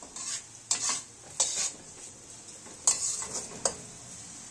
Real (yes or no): yes